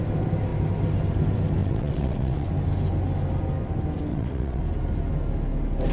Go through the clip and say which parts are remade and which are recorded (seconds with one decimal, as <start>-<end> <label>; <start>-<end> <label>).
0.0-1.6 recorded; 1.6-2.5 remade; 2.5-4.1 recorded; 4.1-4.6 remade; 4.6-5.9 recorded